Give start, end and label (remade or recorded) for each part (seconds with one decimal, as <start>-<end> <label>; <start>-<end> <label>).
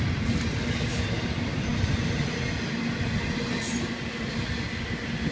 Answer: 0.0-5.3 recorded